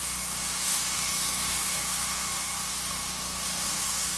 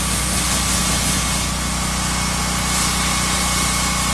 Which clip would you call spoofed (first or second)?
first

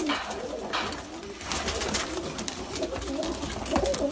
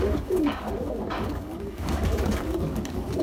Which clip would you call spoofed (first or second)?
second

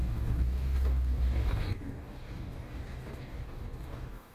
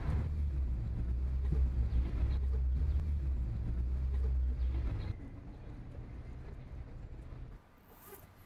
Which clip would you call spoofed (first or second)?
first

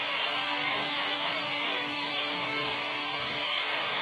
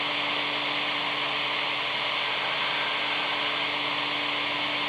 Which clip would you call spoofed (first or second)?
first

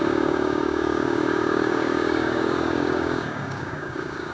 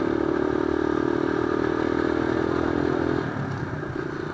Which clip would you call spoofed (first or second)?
first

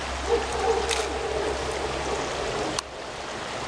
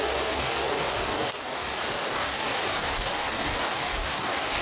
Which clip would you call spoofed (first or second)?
second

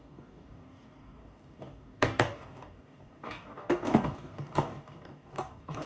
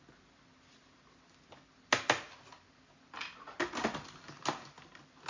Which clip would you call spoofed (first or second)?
first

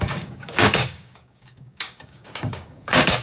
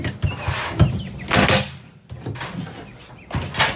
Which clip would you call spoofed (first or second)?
first